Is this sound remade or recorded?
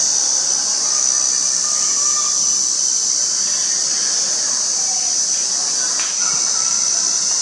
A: recorded